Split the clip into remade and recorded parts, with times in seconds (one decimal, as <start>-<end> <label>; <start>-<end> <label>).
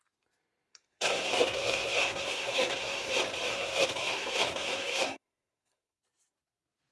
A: 0.0-0.7 recorded; 0.7-3.1 remade; 3.1-3.5 recorded; 3.5-6.0 remade; 6.0-6.9 recorded